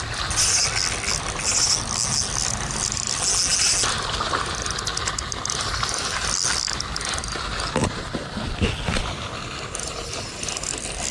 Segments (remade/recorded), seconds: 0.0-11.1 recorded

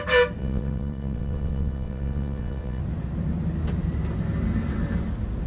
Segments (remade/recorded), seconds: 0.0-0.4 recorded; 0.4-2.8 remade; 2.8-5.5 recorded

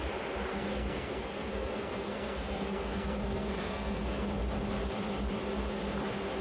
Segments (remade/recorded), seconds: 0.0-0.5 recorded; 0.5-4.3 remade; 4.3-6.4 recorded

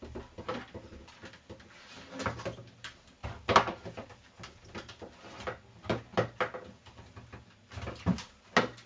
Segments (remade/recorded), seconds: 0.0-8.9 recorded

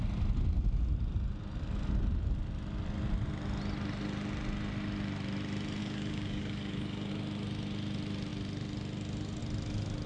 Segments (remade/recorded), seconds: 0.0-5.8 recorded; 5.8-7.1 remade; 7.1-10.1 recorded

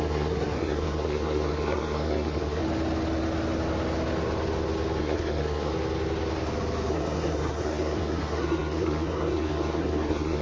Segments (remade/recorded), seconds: 0.0-2.6 remade; 2.6-5.0 recorded; 5.0-5.7 remade; 5.7-6.9 recorded; 6.9-10.4 remade